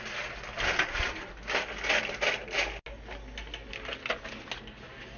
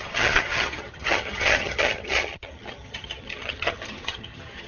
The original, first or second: first